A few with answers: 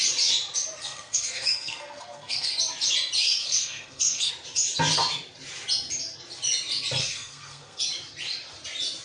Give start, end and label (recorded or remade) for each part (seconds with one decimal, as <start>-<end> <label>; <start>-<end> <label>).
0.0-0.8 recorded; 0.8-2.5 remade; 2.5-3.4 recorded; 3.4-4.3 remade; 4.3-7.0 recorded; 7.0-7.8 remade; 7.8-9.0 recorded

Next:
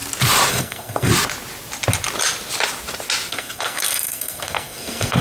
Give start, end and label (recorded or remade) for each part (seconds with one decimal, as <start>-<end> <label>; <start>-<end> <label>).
0.0-0.5 recorded; 0.5-1.1 remade; 1.1-3.3 recorded; 3.3-5.2 remade

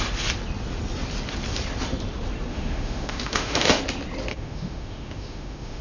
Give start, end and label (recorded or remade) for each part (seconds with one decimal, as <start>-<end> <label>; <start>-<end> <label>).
0.0-2.5 recorded; 2.5-3.8 remade; 3.8-4.3 recorded; 4.3-5.8 remade